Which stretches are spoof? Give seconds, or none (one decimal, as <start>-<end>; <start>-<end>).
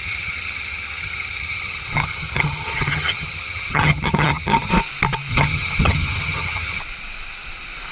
0.0-4.7; 5.3-6.8